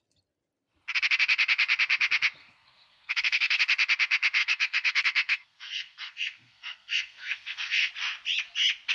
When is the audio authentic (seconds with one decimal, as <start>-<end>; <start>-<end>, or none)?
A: 0.0-2.4; 3.6-4.4; 7.9-8.9